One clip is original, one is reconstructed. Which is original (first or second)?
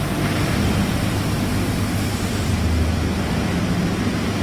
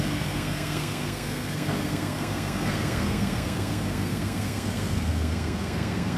first